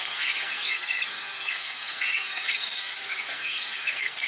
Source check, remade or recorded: remade